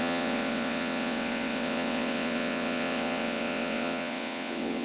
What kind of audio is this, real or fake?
fake